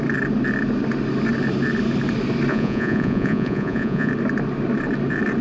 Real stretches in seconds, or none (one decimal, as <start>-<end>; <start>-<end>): 0.0-2.5; 4.1-5.4